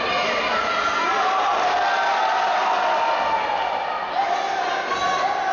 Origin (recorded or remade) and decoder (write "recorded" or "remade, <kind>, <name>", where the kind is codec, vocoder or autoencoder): recorded